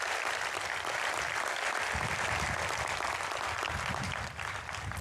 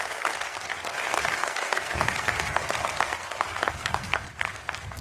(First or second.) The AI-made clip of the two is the second